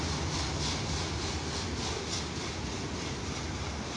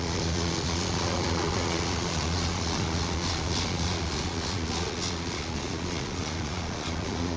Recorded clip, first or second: first